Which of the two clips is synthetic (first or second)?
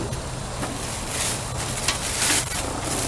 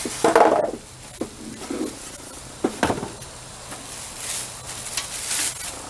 first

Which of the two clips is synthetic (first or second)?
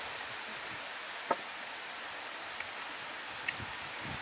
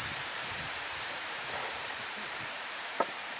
second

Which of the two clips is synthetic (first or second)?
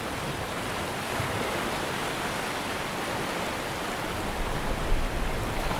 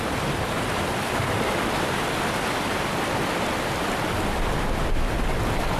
first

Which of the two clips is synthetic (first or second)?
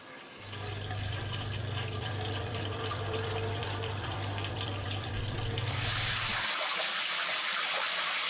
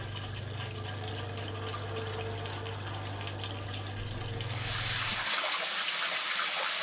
first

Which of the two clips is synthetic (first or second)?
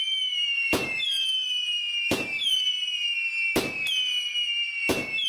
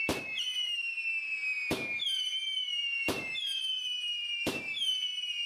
second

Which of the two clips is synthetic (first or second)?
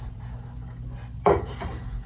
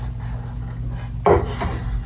first